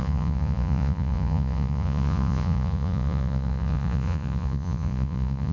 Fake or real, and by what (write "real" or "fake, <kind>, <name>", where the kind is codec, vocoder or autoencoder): fake, vocoder, Vocos